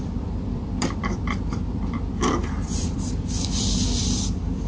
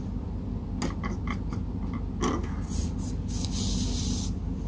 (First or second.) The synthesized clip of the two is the first